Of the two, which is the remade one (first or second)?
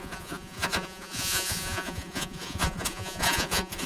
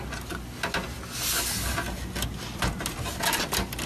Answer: first